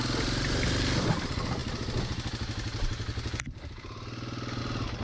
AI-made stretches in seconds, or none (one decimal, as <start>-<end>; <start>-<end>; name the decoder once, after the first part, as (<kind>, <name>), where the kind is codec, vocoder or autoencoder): none